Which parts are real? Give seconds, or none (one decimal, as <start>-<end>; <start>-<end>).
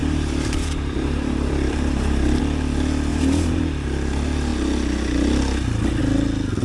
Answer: 2.4-3.1; 3.6-6.6